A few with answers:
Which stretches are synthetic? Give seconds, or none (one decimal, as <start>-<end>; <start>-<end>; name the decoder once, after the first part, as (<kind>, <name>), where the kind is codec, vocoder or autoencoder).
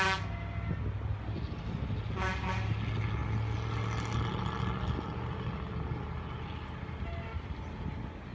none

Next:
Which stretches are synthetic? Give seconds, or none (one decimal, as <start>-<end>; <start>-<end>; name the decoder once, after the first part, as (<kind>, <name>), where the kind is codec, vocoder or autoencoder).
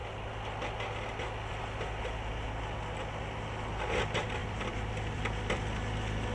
4.4-5.6 (vocoder, BigVGAN v2)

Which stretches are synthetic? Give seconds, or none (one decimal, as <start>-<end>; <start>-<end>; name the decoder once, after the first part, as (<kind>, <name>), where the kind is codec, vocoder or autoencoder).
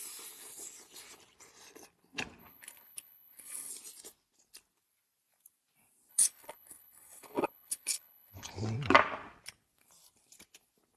2.4-3.7 (codec, HILCodec); 6.1-8.5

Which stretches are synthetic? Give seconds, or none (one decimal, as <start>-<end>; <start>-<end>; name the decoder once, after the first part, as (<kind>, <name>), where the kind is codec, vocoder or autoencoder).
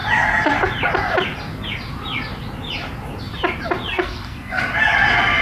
3.9-4.6 (codec, SNAC)